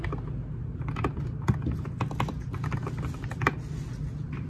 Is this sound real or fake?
real